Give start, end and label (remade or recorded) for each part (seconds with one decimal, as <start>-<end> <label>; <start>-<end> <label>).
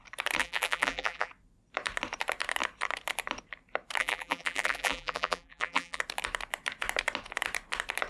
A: 0.0-0.4 recorded; 0.4-1.3 remade; 1.3-4.0 recorded; 4.0-6.0 remade; 6.0-8.1 recorded